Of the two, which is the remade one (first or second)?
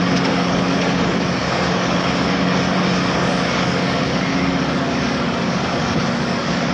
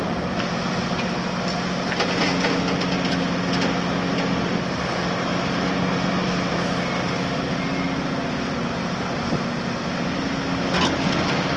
first